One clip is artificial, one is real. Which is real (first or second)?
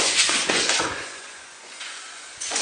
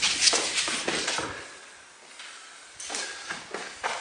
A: second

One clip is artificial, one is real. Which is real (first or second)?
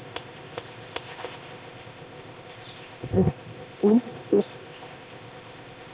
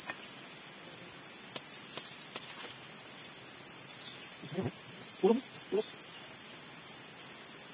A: second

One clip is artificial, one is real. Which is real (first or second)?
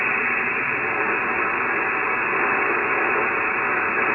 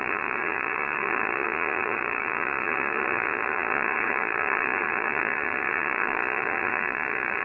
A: first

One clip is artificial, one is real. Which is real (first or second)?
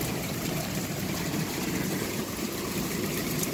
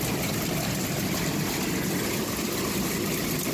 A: second